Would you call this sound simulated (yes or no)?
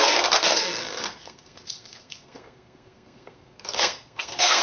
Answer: yes